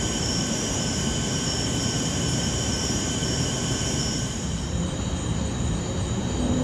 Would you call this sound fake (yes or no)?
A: yes